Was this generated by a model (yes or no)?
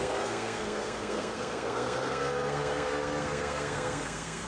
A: yes